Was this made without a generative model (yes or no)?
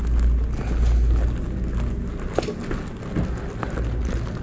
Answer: yes